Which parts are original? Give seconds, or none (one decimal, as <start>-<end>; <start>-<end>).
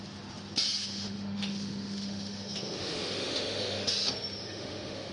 0.0-0.8; 3.9-4.4